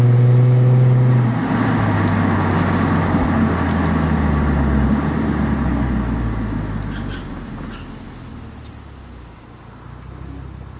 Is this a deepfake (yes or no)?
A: no